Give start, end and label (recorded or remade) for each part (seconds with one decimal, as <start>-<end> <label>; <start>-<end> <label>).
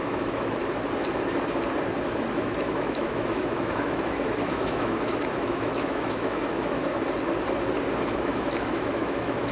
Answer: 0.0-0.6 remade; 0.6-2.3 recorded; 2.3-6.9 remade; 6.9-7.9 recorded; 7.9-9.5 remade